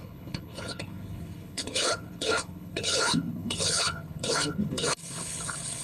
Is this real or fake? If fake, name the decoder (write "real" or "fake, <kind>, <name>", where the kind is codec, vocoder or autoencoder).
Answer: fake, codec, HILCodec